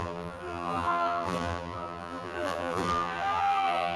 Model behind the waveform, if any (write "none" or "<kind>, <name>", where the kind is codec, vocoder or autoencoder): vocoder, BigVGAN v2